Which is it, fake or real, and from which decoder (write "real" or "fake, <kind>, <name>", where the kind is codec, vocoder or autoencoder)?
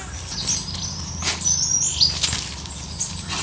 real